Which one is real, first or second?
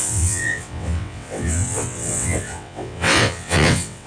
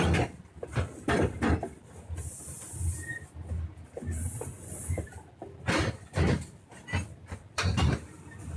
second